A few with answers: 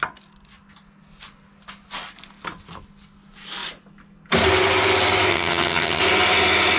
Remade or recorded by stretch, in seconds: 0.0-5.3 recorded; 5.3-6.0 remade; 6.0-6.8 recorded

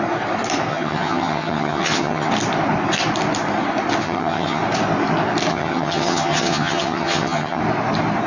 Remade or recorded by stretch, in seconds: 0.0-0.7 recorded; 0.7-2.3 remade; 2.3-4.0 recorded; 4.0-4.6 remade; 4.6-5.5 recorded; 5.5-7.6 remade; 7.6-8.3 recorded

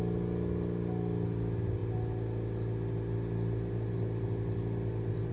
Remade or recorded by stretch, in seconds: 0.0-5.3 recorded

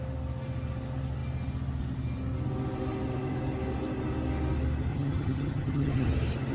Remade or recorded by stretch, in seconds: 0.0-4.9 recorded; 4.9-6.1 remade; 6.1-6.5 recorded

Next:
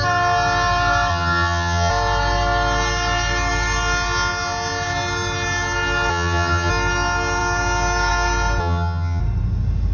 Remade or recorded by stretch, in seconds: 0.0-1.1 recorded; 1.1-1.9 remade; 1.9-6.1 recorded; 6.1-6.7 remade; 6.7-8.6 recorded; 8.6-9.2 remade; 9.2-9.9 recorded

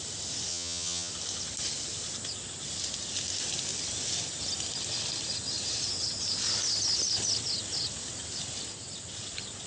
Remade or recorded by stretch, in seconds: 0.0-0.5 recorded; 0.5-1.1 remade; 1.1-9.7 recorded

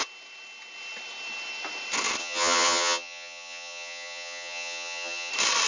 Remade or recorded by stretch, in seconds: 0.0-2.2 recorded; 2.2-5.3 remade; 5.3-5.7 recorded

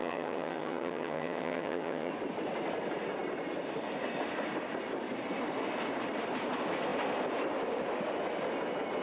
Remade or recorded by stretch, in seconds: 0.0-2.1 remade; 2.1-9.0 recorded